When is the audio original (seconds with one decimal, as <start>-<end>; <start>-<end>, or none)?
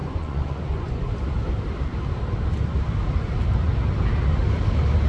1.1-5.1